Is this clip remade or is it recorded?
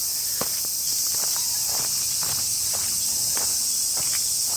recorded